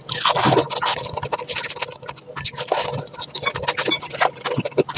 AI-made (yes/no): no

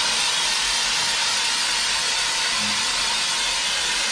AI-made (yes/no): no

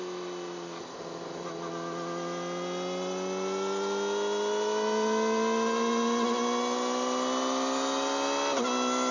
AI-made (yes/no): no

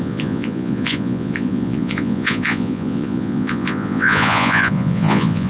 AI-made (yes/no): yes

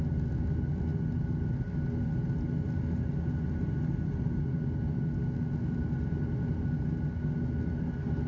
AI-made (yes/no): no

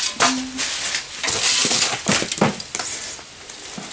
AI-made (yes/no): no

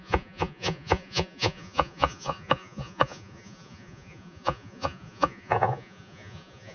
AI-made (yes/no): yes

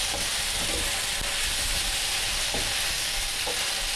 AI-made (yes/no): no